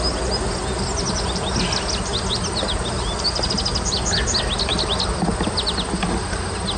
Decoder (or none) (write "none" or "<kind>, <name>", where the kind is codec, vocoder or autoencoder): none